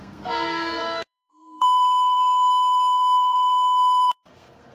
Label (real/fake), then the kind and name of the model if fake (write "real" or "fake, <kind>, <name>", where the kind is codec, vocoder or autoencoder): fake, codec, SNAC